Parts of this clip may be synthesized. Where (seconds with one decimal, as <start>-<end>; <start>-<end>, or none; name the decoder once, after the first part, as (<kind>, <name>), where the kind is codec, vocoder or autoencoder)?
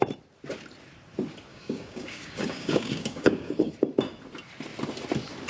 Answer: 1.5-3.7 (codec, DAC)